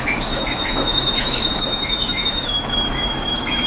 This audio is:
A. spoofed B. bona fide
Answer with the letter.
A